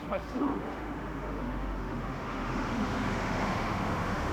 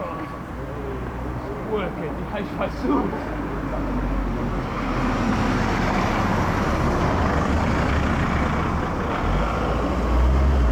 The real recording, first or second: second